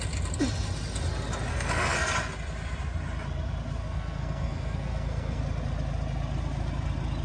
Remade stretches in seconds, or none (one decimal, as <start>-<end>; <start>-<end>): 1.5-2.1; 3.8-5.4